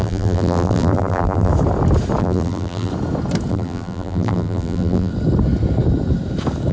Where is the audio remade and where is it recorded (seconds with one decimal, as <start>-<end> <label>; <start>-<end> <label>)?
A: 0.0-1.5 remade; 1.5-2.2 recorded; 2.2-2.9 remade; 2.9-3.5 recorded; 3.5-5.1 remade; 5.1-6.7 recorded